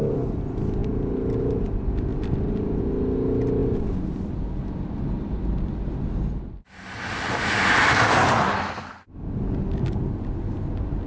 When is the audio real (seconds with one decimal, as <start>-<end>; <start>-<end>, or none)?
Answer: 0.0-0.8; 1.6-2.1; 2.8-11.1